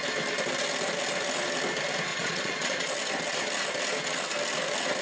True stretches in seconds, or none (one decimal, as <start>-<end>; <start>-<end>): 0.0-2.1; 2.9-5.0